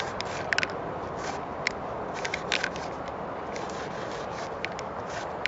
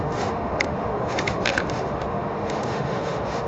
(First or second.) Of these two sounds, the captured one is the first